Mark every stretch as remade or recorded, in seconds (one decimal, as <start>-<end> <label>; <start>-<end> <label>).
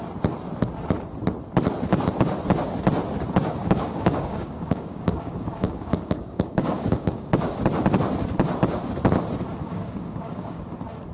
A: 0.0-3.6 recorded; 3.6-7.6 remade; 7.6-9.6 recorded; 9.6-10.6 remade; 10.6-11.1 recorded